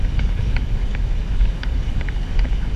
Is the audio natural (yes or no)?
no